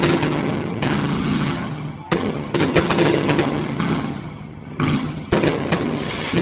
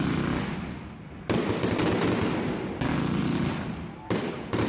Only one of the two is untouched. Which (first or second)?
second